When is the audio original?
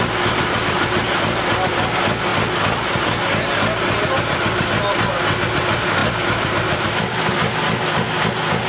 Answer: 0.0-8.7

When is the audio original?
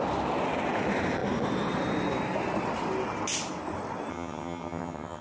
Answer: 0.0-4.1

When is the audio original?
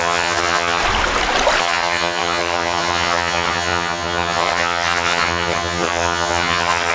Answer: 0.8-1.6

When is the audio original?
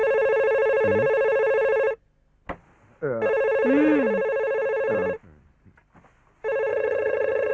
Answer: 0.0-6.7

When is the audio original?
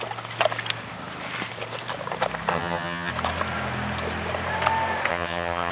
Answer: 0.0-2.5; 3.1-5.1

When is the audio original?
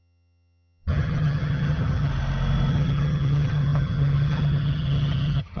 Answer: 2.1-2.7